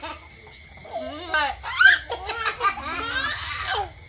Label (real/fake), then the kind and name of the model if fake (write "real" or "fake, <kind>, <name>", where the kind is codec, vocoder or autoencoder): real